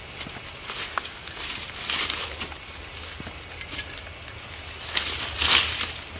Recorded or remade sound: recorded